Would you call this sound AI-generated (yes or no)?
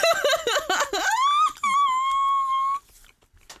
no